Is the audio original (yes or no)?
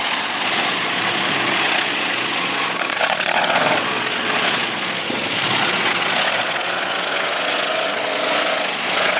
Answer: no